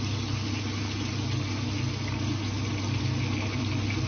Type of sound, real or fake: real